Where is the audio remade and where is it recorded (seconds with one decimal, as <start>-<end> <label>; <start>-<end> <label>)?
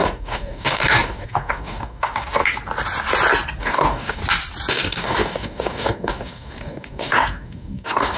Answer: 0.0-2.4 remade; 2.4-3.6 recorded; 3.6-4.2 remade; 4.2-4.7 recorded; 4.7-8.2 remade